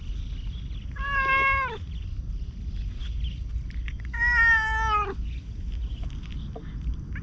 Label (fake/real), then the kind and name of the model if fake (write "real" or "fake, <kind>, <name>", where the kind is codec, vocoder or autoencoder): real